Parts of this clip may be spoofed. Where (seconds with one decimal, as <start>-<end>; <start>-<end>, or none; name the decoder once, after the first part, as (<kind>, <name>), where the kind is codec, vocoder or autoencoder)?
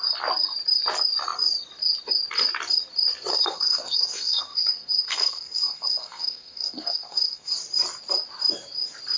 3.3-7.5 (codec, SNAC)